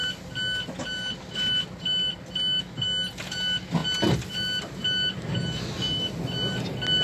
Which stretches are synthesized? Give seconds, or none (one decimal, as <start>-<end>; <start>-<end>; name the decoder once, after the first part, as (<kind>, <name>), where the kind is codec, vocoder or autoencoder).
none